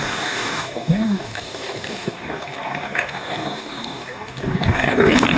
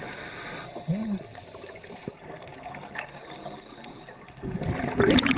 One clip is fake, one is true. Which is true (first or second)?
second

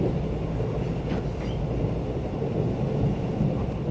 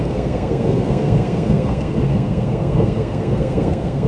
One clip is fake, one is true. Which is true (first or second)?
first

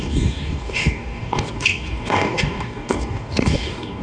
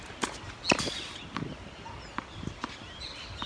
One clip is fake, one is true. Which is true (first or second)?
second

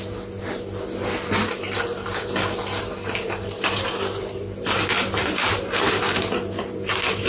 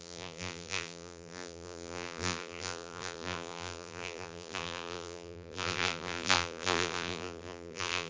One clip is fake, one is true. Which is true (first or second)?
first